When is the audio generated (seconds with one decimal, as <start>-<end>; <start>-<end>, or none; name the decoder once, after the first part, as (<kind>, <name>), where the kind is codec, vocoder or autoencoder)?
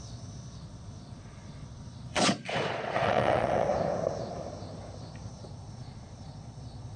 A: 0.0-3.7 (vocoder, Vocos); 5.3-7.0